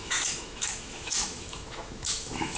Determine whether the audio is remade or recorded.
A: remade